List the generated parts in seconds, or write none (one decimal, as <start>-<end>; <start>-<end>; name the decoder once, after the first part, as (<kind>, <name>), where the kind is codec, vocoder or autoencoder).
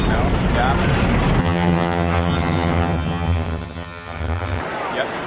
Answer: 1.4-4.6 (vocoder, HiFi-GAN)